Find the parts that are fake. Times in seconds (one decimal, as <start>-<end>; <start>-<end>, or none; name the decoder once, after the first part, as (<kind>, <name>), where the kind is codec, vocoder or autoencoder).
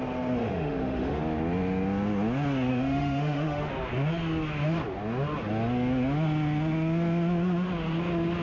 0.4-1.2 (autoencoder, DAC-VAE); 2.7-3.7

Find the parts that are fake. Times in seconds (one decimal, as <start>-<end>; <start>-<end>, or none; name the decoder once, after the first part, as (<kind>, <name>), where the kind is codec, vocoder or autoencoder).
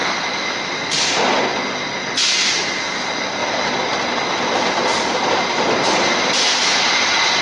0.0-0.9 (vocoder, BigVGAN v2)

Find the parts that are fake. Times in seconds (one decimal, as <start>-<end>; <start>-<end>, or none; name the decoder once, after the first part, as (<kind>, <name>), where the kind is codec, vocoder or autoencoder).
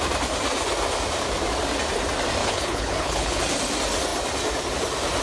2.4-3.4 (codec, HILCodec)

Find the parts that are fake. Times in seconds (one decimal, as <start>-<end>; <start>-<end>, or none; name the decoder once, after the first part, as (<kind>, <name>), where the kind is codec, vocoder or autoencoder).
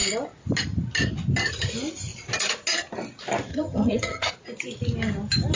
3.5-4.3 (vocoder, HiFi-GAN)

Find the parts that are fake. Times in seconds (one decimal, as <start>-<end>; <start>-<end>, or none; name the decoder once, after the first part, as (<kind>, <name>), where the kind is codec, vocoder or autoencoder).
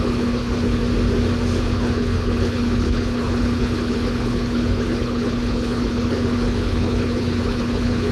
0.0-0.8 (codec, HILCodec); 1.6-8.1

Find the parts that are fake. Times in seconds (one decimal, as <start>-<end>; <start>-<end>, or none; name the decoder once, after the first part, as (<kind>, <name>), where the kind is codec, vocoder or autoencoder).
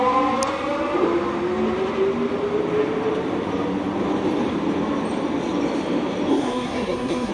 6.3-7.3 (codec, SNAC)